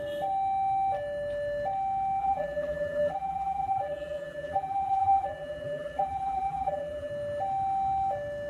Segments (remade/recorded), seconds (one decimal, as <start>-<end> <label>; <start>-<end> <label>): 0.0-2.2 recorded; 2.2-7.1 remade; 7.1-8.5 recorded